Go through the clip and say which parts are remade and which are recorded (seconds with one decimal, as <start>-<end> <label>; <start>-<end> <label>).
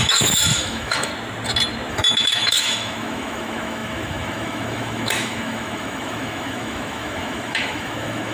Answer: 0.0-1.1 remade; 1.1-1.9 recorded; 1.9-8.3 remade